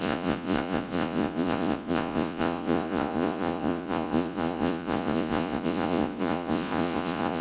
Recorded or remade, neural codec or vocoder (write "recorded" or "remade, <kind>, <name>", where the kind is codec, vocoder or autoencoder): remade, vocoder, Vocos